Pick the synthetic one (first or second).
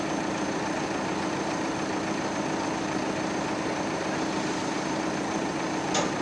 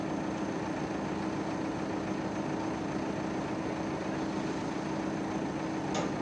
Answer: first